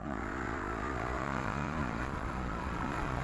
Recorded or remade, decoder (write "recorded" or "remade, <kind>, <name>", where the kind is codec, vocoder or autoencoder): remade, vocoder, Vocos